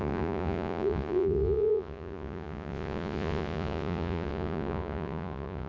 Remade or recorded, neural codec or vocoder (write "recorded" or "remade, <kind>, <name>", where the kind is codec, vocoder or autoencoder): remade, vocoder, Vocos